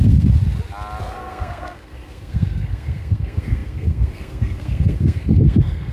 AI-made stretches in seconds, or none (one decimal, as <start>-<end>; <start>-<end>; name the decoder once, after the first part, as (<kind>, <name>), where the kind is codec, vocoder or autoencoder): 0.0-0.4 (codec, SNAC); 1.0-5.9